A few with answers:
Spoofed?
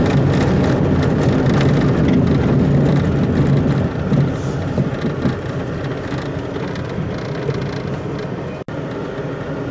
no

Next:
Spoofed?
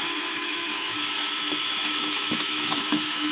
yes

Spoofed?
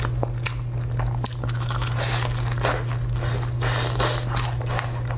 no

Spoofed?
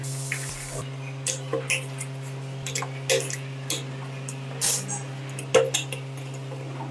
no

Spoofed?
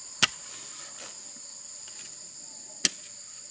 no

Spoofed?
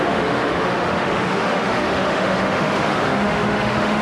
yes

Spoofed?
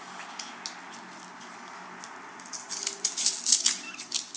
no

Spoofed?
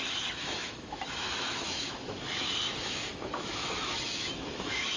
yes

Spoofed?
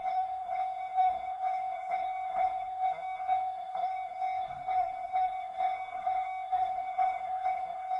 yes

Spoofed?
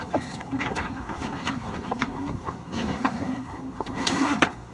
yes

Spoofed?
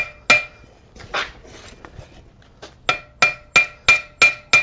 no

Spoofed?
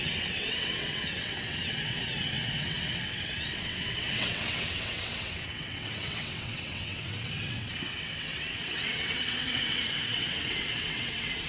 yes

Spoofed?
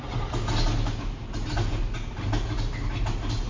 no